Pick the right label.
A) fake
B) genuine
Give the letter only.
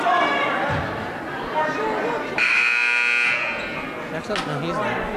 B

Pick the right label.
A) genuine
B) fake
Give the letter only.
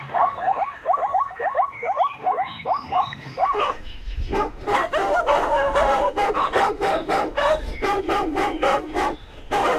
B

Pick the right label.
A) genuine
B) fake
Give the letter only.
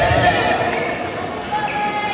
A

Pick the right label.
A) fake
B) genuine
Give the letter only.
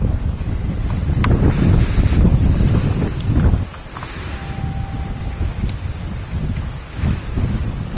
B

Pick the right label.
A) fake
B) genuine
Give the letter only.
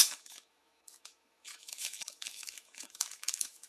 A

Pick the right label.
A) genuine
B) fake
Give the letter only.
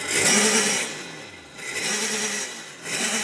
A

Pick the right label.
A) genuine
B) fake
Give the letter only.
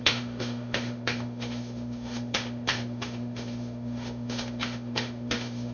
B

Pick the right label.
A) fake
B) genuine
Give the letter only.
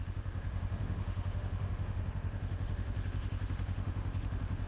A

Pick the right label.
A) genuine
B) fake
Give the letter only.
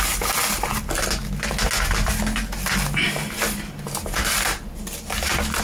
A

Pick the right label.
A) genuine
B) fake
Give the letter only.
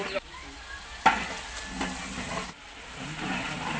A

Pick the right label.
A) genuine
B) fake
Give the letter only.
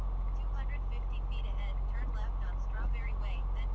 A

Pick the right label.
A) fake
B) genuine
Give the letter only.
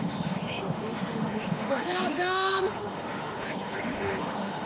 A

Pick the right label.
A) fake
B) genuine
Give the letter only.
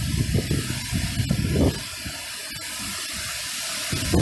B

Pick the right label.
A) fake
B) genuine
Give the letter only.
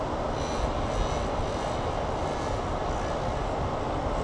B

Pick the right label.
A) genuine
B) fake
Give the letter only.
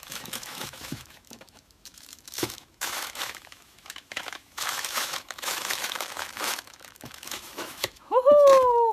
B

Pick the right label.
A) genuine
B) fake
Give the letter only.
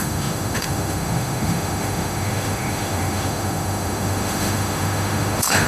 B